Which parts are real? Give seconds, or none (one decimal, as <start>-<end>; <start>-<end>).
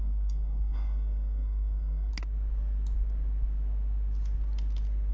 2.1-5.1